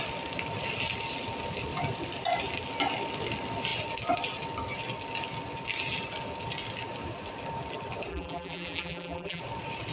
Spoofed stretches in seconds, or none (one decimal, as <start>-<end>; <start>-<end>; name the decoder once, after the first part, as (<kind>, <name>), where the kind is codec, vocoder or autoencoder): 8.1-9.4 (vocoder, BigVGAN v2)